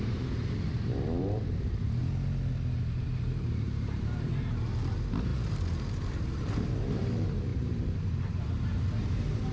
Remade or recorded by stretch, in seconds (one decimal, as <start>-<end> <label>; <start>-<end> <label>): 0.0-2.0 remade; 2.0-2.8 recorded; 2.8-9.5 remade